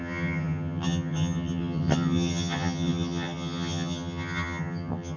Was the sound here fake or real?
fake